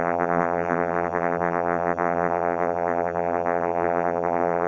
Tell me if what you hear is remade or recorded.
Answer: remade